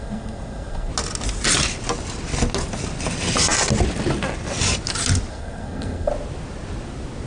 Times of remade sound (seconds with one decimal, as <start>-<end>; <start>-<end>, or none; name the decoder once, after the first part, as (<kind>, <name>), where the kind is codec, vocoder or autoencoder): 0.0-0.9 (codec, SNAC); 5.3-6.1